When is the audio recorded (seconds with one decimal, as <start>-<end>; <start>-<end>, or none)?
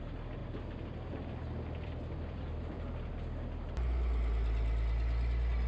0.0-0.4; 3.1-5.7